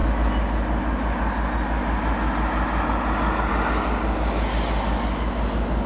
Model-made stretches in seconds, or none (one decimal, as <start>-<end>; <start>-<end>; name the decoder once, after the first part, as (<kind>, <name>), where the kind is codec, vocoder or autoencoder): none